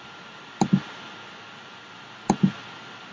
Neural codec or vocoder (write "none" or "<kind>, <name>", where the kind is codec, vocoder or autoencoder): none